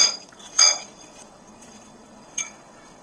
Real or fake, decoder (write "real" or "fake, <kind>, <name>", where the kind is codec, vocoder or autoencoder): fake, vocoder, WaveNeXt